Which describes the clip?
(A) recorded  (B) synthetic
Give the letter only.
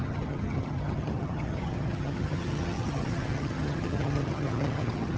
B